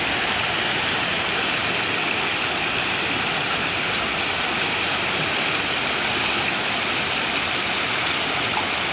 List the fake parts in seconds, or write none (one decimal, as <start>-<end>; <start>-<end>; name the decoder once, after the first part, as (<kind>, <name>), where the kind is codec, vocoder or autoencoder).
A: none